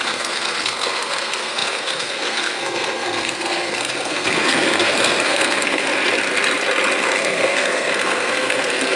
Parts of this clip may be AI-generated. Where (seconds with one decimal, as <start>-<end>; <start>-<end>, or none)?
0.0-5.9; 7.0-9.0